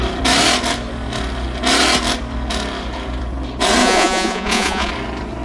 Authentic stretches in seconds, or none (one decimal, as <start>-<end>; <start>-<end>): 0.0-3.8; 4.9-5.4